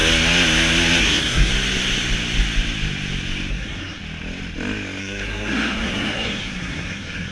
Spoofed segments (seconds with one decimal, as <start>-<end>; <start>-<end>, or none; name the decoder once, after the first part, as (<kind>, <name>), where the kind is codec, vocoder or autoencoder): 1.0-1.5 (codec, SNAC); 3.5-4.0; 5.0-7.3